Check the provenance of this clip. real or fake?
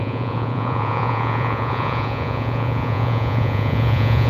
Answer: fake